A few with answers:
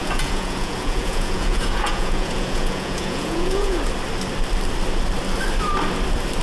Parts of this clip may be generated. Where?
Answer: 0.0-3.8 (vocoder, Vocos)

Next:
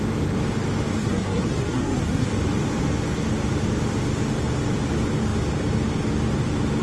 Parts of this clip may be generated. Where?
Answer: 1.0-2.3 (codec, SNAC)

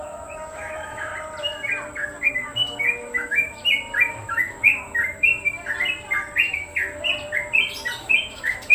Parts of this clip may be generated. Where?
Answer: 0.0-1.1 (autoencoder, DAC-VAE); 2.3-3.6; 4.1-5.3; 8.0-8.7

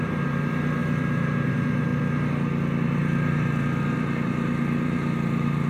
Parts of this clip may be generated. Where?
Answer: 0.0-1.9 (vocoder, BigVGAN v2); 2.8-5.7

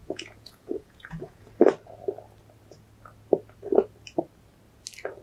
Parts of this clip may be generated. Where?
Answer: 0.0-1.5 (vocoder, Vocos)

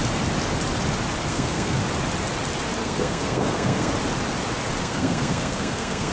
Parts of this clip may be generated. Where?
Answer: 1.3-1.8 (codec, SNAC); 2.8-3.9; 4.8-6.1